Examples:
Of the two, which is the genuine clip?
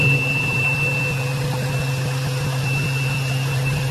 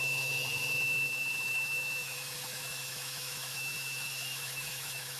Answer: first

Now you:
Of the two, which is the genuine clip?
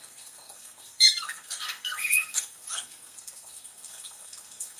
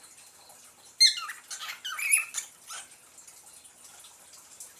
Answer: second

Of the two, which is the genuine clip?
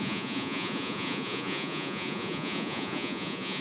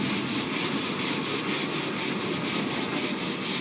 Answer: second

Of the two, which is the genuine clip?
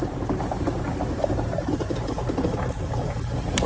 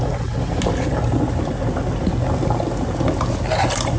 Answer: second